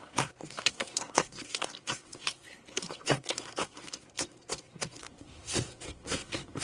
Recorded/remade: remade